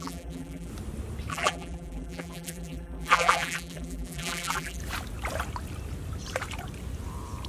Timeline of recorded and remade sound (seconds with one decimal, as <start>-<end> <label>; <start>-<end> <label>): 0.0-0.7 remade; 0.7-1.3 recorded; 1.3-4.8 remade; 4.8-7.5 recorded